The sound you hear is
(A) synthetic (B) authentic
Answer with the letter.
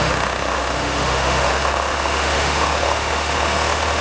A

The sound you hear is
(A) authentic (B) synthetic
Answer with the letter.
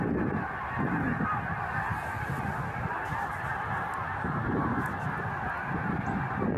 A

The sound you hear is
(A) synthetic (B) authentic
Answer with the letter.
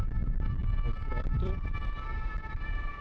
A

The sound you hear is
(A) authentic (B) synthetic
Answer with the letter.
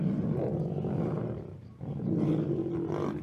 A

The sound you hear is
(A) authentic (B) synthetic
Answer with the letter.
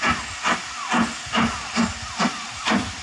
A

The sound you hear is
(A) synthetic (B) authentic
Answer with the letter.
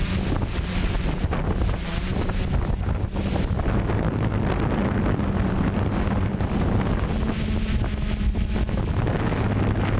B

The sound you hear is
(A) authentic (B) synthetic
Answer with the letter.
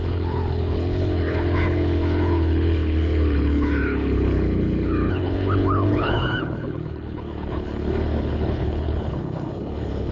B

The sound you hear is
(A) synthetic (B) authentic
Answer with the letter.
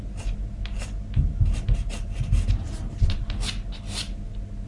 B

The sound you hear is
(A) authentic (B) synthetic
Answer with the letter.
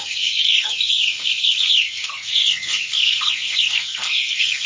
B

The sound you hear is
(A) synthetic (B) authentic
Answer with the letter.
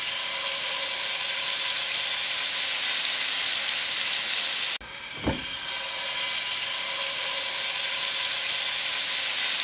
B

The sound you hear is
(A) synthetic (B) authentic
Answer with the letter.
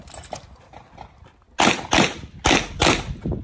B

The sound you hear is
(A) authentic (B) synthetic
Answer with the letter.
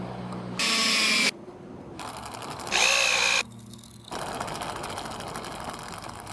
A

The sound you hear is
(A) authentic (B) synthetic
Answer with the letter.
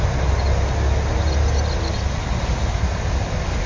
A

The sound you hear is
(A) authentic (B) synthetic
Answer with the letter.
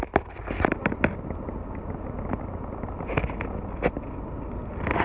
A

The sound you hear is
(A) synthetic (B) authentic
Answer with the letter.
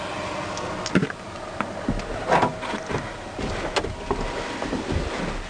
B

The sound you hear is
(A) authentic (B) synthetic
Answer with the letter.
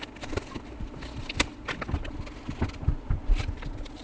A